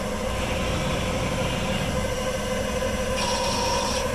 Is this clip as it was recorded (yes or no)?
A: yes